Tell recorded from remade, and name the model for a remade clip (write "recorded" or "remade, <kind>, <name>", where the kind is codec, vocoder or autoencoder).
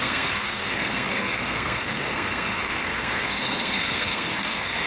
remade, codec, SNAC